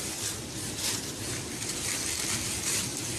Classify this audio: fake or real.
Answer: real